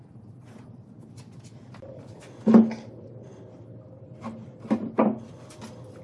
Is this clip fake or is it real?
real